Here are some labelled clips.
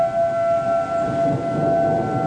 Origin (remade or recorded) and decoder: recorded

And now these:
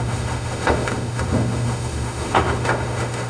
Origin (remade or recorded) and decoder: remade, autoencoder, DAC-VAE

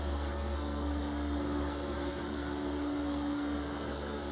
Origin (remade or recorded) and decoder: remade, codec, SNAC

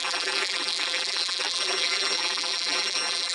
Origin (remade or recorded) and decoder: remade, vocoder, BigVGAN v2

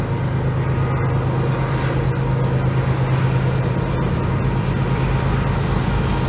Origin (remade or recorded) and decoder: recorded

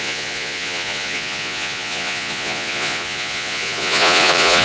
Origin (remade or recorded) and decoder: remade, vocoder, Vocos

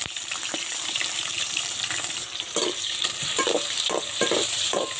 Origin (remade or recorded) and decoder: remade, vocoder, BigVGAN v2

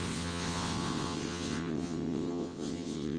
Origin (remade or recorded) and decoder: remade, vocoder, WaveNeXt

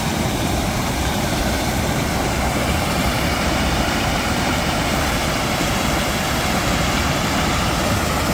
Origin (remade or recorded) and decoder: remade, vocoder, BigVGAN v2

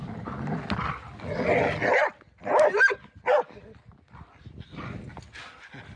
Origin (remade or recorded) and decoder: recorded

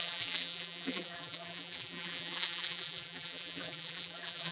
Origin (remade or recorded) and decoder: remade, vocoder, BigVGAN v2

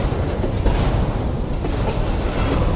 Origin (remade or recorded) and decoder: recorded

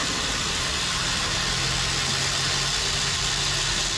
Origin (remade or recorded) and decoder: recorded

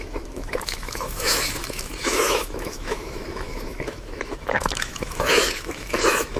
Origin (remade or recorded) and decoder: remade, autoencoder, DAC-VAE